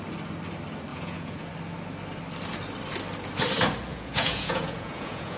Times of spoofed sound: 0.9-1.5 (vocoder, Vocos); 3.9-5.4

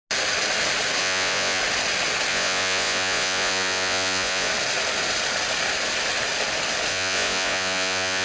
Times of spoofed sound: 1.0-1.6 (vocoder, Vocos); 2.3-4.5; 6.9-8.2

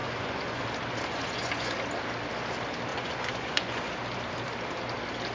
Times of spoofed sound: 0.0-0.6 (vocoder, Vocos); 1.1-1.7; 2.9-3.9